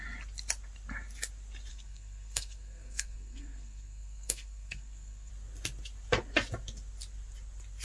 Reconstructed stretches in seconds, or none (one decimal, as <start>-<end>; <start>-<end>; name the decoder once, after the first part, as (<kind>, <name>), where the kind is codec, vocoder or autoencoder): 1.7-5.3 (codec, SNAC)